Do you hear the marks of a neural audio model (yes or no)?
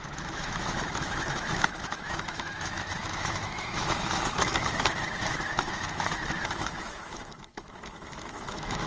yes